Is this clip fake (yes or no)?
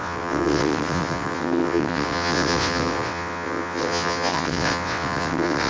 yes